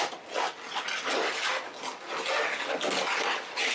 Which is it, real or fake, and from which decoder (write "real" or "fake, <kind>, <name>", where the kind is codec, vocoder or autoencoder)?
real